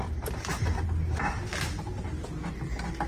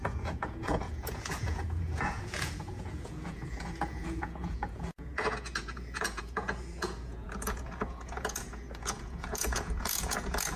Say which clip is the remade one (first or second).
second